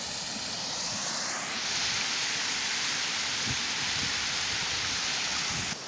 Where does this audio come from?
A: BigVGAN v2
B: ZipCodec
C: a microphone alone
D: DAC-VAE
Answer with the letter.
C